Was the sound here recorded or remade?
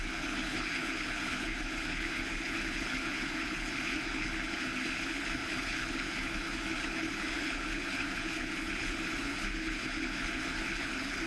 remade